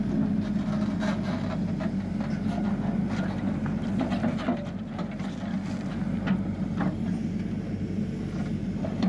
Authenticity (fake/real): real